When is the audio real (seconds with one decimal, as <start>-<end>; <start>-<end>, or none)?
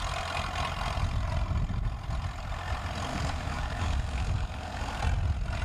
0.0-3.1; 5.0-5.6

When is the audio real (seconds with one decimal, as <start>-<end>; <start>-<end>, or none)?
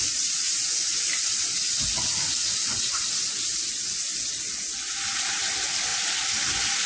0.0-6.9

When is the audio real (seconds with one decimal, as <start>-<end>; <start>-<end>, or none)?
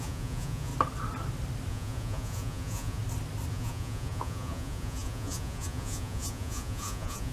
0.7-1.7; 3.0-3.5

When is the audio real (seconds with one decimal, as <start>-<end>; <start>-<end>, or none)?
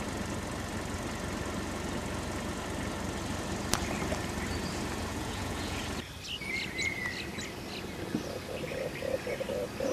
0.0-5.1; 5.8-9.9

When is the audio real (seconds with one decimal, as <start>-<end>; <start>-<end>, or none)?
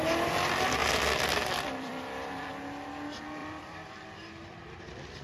0.0-0.8; 2.5-3.4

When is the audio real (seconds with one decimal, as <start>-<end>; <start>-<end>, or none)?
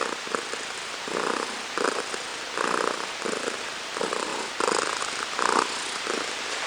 0.0-6.7